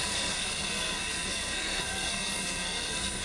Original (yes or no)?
no